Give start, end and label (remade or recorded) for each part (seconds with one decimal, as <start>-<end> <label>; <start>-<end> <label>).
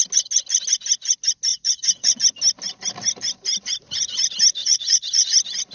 0.0-1.5 recorded; 1.5-2.2 remade; 2.2-4.6 recorded; 4.6-5.3 remade; 5.3-5.7 recorded